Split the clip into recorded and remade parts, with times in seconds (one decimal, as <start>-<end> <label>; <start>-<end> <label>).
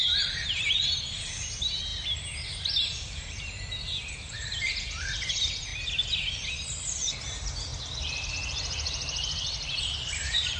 0.0-5.7 remade; 5.7-6.5 recorded; 6.5-7.7 remade; 7.7-8.3 recorded; 8.3-10.6 remade